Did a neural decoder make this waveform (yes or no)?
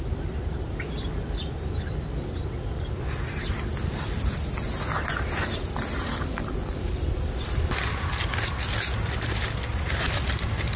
no